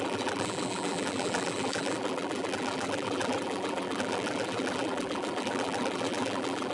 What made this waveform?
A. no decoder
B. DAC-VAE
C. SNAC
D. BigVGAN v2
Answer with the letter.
D